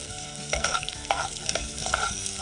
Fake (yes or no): yes